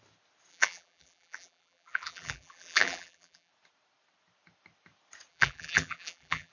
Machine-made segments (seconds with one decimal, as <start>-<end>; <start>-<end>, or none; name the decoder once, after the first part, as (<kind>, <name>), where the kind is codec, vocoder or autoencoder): 0.5-3.5 (vocoder, BigVGAN v2); 5.3-6.5